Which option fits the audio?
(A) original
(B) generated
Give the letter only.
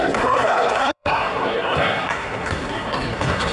B